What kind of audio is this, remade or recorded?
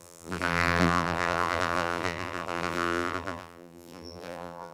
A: remade